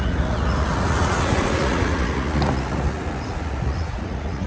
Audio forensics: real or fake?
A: fake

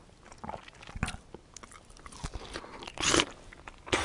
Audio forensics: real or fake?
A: real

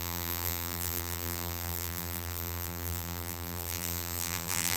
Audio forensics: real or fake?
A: fake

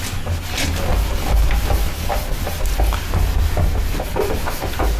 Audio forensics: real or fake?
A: real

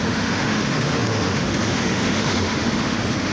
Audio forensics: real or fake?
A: fake